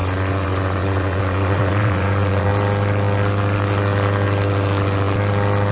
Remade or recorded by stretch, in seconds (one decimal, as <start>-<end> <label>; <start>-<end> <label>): 0.0-2.5 remade; 2.5-5.7 recorded